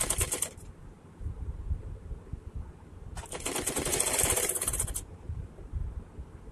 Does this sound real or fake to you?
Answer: real